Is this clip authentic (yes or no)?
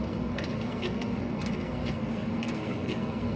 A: no